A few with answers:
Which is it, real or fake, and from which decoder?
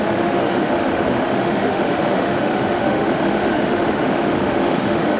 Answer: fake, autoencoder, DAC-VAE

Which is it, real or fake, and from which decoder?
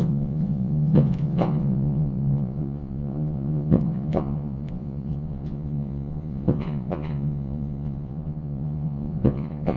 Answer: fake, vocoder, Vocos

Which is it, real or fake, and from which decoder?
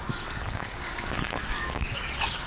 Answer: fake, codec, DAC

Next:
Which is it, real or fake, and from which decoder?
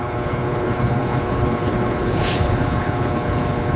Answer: fake, codec, HILCodec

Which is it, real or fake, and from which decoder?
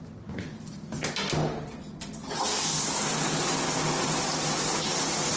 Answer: real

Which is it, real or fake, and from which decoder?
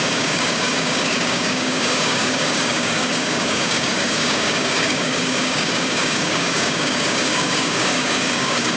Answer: fake, codec, DAC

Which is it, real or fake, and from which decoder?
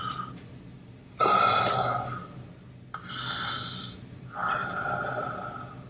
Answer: real